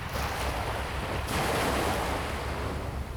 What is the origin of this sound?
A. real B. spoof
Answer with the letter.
A